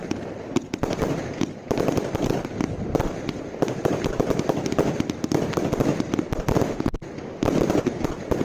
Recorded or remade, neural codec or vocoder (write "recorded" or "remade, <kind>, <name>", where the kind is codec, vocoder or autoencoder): recorded